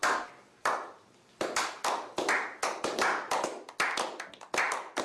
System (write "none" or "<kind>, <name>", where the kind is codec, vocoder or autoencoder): none